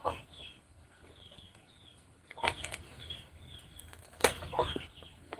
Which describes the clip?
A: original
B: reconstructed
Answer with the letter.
B